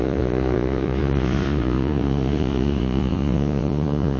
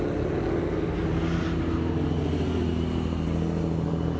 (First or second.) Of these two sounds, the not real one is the first